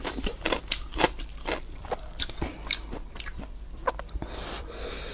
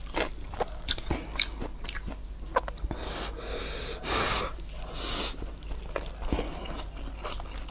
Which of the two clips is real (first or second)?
second